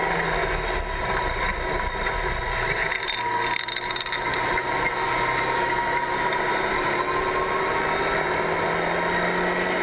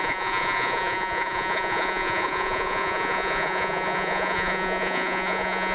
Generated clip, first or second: second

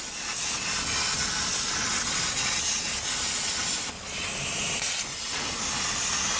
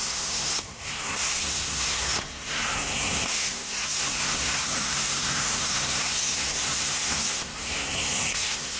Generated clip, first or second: second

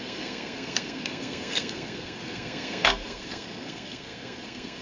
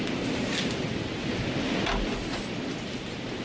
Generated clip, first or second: first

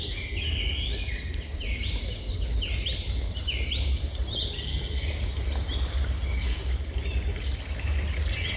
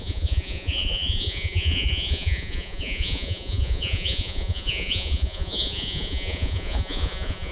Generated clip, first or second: second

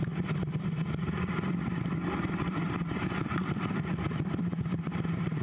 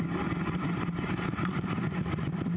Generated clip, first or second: first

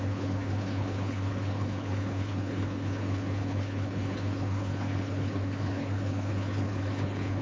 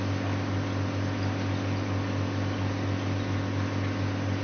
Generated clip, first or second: first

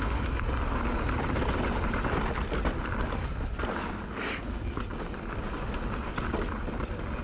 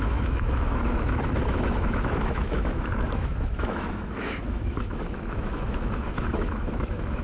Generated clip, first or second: second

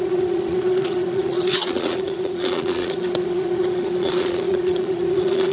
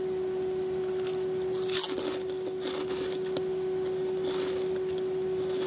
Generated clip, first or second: first